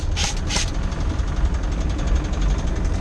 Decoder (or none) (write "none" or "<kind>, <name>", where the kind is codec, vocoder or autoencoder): none